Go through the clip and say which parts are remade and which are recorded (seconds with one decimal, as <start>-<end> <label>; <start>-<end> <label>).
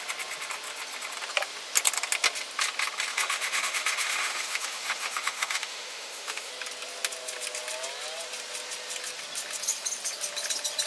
0.0-3.1 recorded; 3.1-6.5 remade; 6.5-10.9 recorded